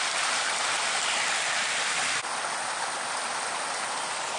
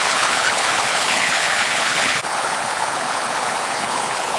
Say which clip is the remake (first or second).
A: second